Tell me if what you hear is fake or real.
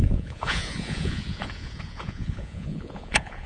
fake